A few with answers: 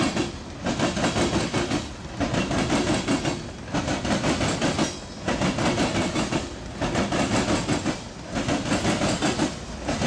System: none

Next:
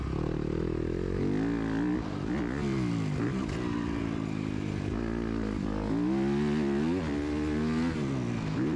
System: none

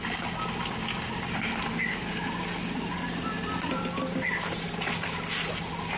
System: none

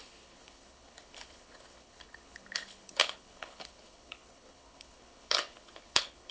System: codec, HILCodec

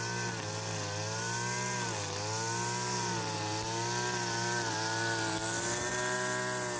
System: none